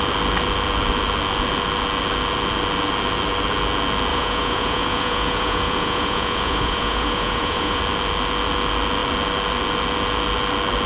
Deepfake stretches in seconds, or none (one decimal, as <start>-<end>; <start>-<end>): 4.1-7.8